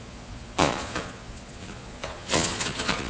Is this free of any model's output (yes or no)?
no